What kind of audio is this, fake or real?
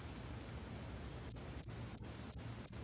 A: real